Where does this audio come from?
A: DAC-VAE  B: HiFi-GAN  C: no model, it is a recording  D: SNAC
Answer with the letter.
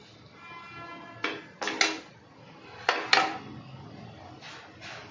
C